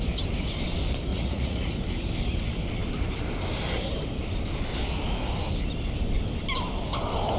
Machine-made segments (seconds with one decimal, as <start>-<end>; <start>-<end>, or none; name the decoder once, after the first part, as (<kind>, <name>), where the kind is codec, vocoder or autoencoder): 1.1-1.7 (vocoder, Vocos)